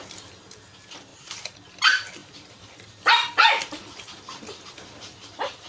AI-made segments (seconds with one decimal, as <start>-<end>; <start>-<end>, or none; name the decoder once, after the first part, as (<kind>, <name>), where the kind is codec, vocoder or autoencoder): 2.2-5.7 (vocoder, BigVGAN v2)